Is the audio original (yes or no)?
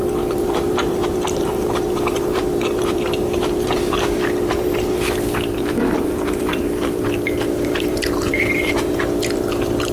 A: no